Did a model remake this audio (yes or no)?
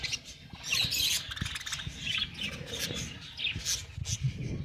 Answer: no